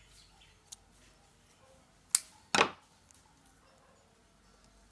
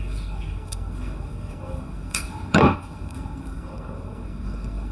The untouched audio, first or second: first